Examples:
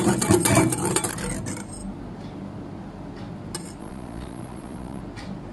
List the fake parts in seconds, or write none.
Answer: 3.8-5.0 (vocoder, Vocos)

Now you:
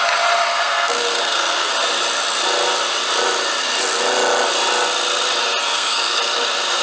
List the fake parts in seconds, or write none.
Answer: 0.5-1.7 (codec, SNAC); 5.6-6.2

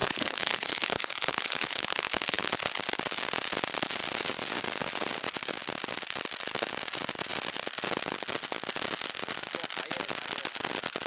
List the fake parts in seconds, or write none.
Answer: 0.0-2.5 (codec, HILCodec)